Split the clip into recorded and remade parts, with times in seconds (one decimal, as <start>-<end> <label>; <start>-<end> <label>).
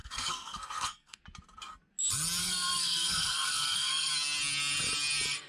0.0-1.2 remade; 1.2-2.4 recorded; 2.4-4.1 remade; 4.1-5.5 recorded